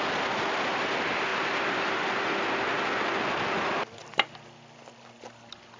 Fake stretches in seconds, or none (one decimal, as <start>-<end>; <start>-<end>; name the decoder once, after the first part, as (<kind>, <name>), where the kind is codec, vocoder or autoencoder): 1.3-2.1 (vocoder, BigVGAN v2)